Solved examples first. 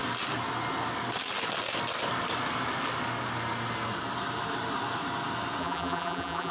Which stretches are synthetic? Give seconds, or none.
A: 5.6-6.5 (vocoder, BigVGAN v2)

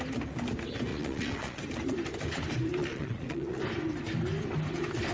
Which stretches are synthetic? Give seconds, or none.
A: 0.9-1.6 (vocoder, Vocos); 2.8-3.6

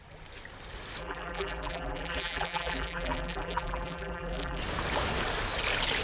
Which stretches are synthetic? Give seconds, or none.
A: 1.0-4.6 (vocoder, BigVGAN v2)

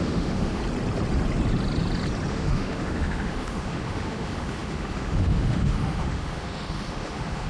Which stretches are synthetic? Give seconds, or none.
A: 0.0-0.6 (autoencoder, DAC-VAE); 2.3-7.5

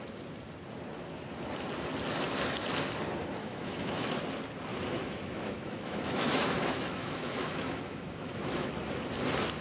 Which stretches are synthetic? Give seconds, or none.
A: 3.4-4.2 (autoencoder, DAC-VAE); 4.7-8.7

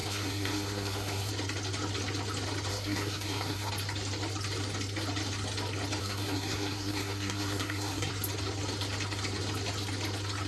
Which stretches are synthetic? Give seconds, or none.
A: 0.0-1.3 (codec, SNAC); 2.7-3.7; 6.0-8.1

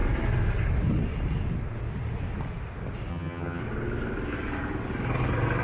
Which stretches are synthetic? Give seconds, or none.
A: 3.1-3.6 (vocoder, HiFi-GAN)